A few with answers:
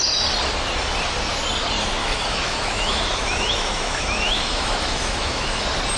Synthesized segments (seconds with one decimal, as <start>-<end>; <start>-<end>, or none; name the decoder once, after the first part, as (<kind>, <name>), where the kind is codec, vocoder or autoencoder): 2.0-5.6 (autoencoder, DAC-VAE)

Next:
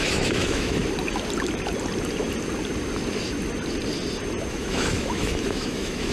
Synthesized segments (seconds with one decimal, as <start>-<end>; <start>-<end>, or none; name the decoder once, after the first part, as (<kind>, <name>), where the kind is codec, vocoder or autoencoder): 0.0-0.8 (autoencoder, DAC-VAE); 4.5-6.1

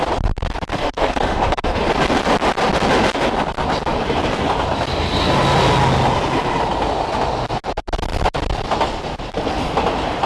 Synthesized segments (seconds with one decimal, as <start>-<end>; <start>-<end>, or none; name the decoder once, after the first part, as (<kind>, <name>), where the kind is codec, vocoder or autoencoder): 0.7-1.8 (autoencoder, DAC-VAE)

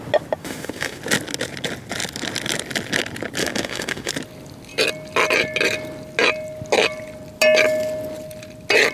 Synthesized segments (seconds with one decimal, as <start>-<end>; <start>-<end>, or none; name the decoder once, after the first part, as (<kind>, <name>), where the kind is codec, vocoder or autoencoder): 0.4-1.0 (autoencoder, DAC-VAE); 3.4-4.1